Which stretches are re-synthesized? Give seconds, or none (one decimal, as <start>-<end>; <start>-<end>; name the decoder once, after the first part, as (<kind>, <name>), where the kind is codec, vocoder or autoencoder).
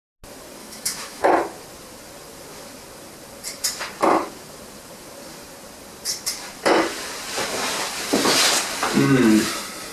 0.6-1.3 (autoencoder, DAC-VAE)